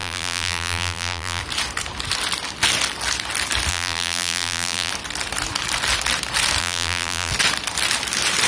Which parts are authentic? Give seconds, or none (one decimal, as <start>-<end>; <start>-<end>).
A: 1.4-3.7; 4.9-6.6; 7.3-8.5